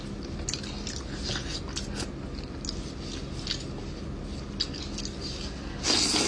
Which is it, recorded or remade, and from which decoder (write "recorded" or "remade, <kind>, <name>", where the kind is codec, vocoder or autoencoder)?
recorded